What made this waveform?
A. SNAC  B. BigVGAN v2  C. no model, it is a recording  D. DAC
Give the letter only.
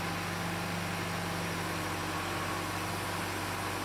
C